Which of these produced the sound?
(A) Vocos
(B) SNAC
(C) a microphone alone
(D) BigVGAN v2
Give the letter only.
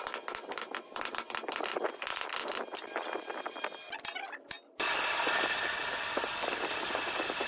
C